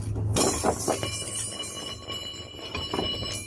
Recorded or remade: recorded